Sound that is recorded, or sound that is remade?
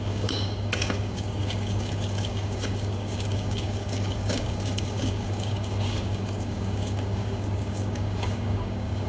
remade